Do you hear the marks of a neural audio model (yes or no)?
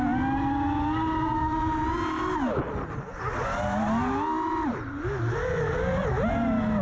no